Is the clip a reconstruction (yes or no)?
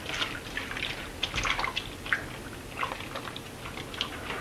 no